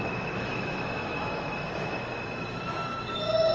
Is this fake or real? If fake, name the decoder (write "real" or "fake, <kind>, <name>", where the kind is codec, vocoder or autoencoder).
fake, autoencoder, DAC-VAE